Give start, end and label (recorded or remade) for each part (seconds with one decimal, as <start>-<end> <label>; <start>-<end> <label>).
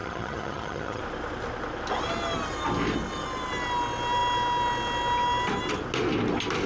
0.0-1.0 remade; 1.0-6.7 recorded